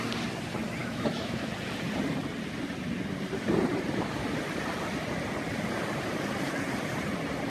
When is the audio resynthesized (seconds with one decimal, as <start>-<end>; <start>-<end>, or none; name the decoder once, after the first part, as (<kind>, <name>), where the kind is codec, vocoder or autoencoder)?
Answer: 0.8-1.5 (autoencoder, DAC-VAE)